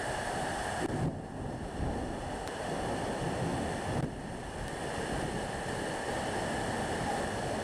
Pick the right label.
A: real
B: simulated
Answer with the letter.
A